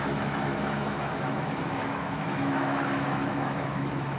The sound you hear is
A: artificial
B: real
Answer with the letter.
A